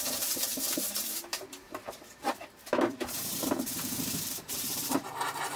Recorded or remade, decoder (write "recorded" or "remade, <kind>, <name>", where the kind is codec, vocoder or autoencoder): remade, vocoder, BigVGAN v2